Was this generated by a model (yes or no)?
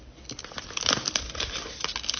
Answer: no